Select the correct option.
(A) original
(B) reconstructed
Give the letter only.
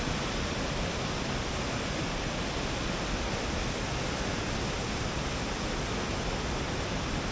A